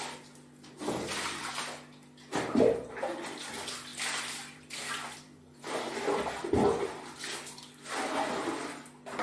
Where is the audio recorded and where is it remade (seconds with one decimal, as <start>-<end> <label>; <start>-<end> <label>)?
0.0-3.9 recorded; 3.9-6.8 remade; 6.8-9.2 recorded